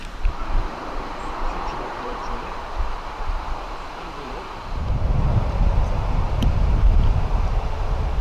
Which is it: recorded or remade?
remade